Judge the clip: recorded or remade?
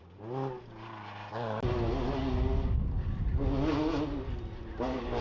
recorded